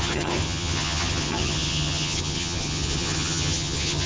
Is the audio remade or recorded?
remade